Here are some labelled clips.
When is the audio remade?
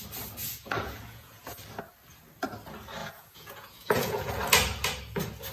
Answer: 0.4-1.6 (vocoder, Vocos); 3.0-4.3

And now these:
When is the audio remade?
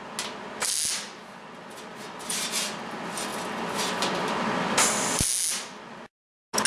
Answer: none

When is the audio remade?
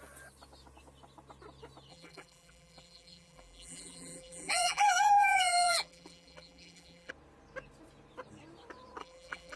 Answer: 1.9-7.1 (vocoder, BigVGAN v2); 9.0-9.6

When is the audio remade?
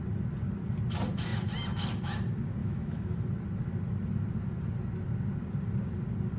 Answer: 2.6-3.2 (autoencoder, DAC-VAE)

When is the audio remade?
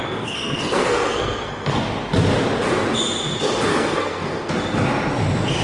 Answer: 0.0-1.8 (codec, SNAC); 3.7-4.5